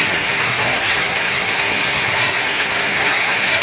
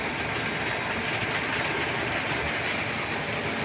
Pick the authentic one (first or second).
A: second